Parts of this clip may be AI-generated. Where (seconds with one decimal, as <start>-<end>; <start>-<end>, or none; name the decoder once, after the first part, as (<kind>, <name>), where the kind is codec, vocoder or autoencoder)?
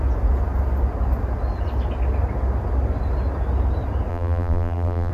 4.1-5.1 (vocoder, BigVGAN v2)